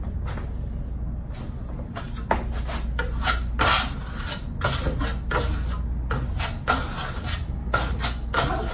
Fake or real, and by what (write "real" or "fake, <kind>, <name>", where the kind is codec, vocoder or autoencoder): real